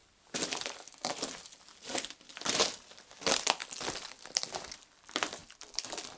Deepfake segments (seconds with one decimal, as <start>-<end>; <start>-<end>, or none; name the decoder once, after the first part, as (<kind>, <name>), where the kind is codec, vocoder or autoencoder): 0.0-6.2 (vocoder, BigVGAN v2)